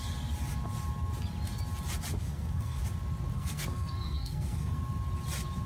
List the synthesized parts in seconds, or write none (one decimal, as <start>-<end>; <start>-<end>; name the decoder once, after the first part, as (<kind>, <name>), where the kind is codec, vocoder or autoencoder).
2.1-2.8 (codec, SNAC); 3.3-4.8